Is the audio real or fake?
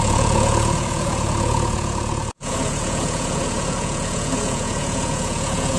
fake